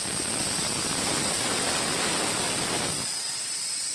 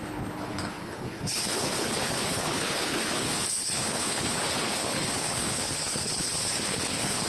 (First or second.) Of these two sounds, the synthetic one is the second